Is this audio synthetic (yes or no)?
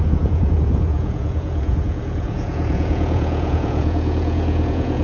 yes